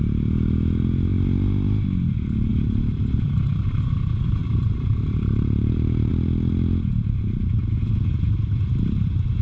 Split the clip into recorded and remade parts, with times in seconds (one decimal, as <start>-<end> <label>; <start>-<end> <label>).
0.0-2.5 recorded; 2.5-3.8 remade; 3.8-4.4 recorded; 4.4-6.1 remade; 6.1-6.9 recorded; 6.9-7.5 remade; 7.5-9.4 recorded